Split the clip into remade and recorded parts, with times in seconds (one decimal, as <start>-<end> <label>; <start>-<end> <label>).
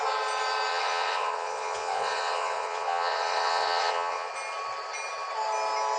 0.0-0.7 recorded; 0.7-4.3 remade; 4.3-6.0 recorded